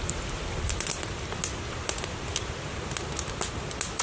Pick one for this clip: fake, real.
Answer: real